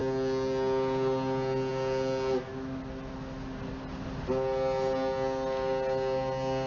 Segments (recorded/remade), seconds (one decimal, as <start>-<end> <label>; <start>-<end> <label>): 0.0-6.7 recorded